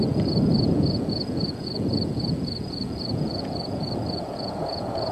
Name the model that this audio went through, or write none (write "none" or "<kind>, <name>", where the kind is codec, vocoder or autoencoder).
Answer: vocoder, Vocos